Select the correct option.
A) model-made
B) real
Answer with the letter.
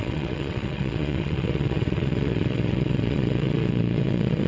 A